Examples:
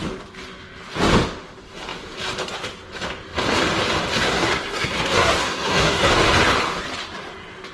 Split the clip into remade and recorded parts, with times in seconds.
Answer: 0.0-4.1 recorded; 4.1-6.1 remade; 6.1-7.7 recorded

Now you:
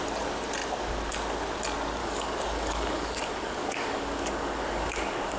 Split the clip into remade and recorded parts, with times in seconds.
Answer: 0.0-2.0 recorded; 2.0-5.4 remade

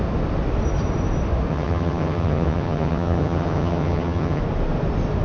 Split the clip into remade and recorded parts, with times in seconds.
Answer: 0.0-1.5 recorded; 1.5-4.4 remade; 4.4-5.2 recorded

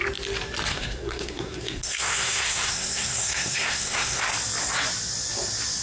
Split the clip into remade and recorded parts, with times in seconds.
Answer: 0.0-0.7 recorded; 0.7-4.2 remade; 4.2-5.8 recorded

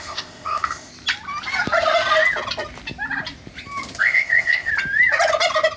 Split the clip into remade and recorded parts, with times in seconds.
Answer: 0.0-0.9 remade; 0.9-4.0 recorded; 4.0-4.7 remade; 4.7-5.8 recorded

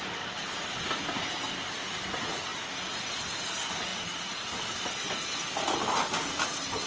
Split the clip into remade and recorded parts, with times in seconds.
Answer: 0.0-6.9 recorded

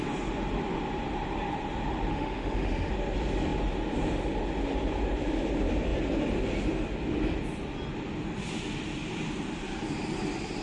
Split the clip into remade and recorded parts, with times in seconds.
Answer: 0.0-2.1 recorded; 2.1-2.9 remade; 2.9-10.6 recorded